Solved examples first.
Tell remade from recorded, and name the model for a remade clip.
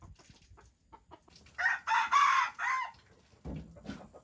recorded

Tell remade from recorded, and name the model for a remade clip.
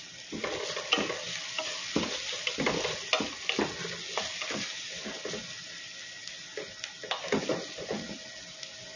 recorded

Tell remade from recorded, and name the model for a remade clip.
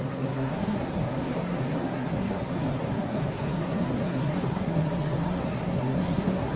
remade, codec, SNAC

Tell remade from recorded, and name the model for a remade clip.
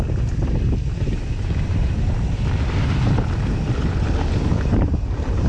recorded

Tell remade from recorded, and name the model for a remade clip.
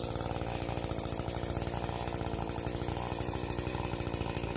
recorded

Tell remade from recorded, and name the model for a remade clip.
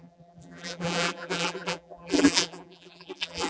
remade, vocoder, BigVGAN v2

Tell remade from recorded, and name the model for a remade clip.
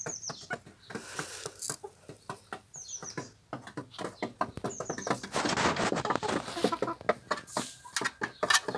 recorded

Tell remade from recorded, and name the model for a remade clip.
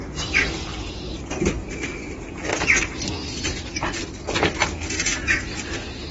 recorded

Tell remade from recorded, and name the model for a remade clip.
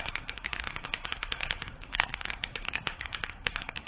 remade, codec, SNAC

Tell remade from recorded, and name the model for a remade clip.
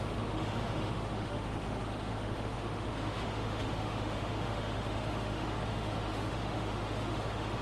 remade, autoencoder, DAC-VAE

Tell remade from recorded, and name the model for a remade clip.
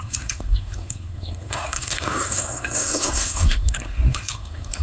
remade, codec, SNAC